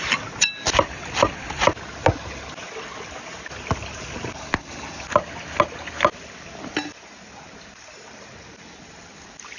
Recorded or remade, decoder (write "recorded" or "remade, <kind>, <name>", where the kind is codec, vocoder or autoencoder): recorded